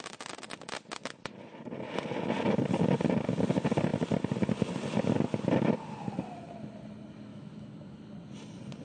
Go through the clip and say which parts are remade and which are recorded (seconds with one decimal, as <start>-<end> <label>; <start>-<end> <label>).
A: 0.0-7.3 recorded; 7.3-8.0 remade; 8.0-8.8 recorded

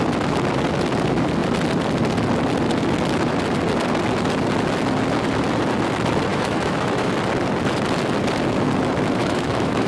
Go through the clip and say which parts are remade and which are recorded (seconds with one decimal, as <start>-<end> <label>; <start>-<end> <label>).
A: 0.0-6.3 recorded; 6.3-7.1 remade; 7.1-9.2 recorded; 9.2-9.9 remade

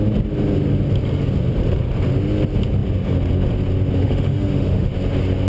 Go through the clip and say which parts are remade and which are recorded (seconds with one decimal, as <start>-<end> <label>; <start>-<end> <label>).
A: 0.0-4.0 recorded; 4.0-4.9 remade; 4.9-5.5 recorded